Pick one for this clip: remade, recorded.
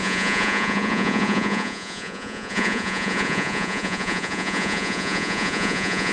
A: remade